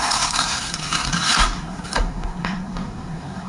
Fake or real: fake